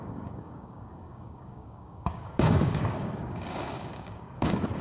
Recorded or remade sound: remade